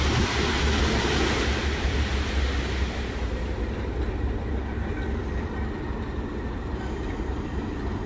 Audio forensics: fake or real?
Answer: real